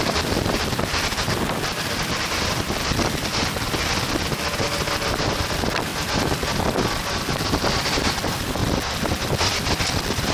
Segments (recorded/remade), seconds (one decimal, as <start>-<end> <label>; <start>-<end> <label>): 0.0-8.6 remade; 8.6-9.2 recorded; 9.2-10.3 remade